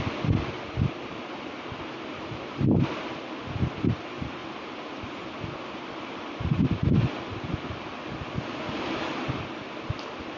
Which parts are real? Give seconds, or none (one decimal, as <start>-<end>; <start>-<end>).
0.0-10.4